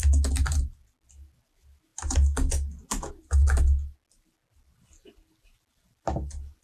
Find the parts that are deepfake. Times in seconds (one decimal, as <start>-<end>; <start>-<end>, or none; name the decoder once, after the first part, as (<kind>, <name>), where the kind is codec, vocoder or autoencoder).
none